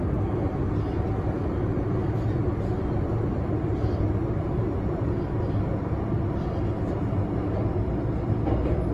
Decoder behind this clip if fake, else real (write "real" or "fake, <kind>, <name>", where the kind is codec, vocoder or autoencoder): real